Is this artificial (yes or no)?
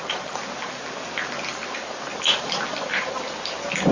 no